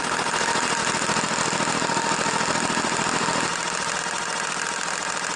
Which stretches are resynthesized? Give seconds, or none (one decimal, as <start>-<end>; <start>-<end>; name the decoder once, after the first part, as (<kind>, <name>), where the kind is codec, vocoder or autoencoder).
0.8-4.0 (vocoder, BigVGAN v2)